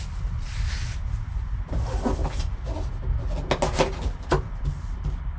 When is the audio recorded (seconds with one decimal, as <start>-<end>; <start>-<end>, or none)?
0.0-5.4